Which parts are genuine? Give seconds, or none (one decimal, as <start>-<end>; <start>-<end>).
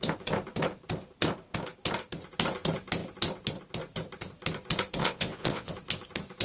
0.0-5.0; 5.7-6.4